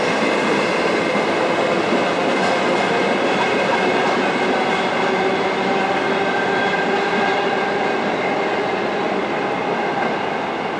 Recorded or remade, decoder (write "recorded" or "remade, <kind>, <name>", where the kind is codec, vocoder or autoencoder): recorded